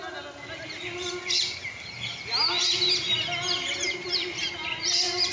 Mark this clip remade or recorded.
recorded